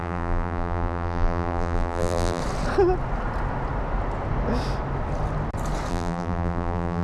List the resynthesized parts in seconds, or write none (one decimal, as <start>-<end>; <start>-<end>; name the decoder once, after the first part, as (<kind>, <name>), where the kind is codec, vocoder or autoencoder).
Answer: 0.0-2.4 (vocoder, BigVGAN v2); 5.9-7.0